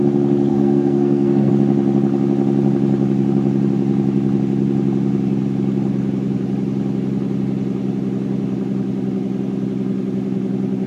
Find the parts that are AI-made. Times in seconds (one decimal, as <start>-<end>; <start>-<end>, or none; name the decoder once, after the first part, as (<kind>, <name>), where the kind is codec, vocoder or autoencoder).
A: 0.5-1.5 (codec, SNAC)